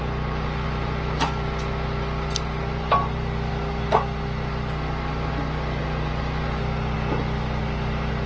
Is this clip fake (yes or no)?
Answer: no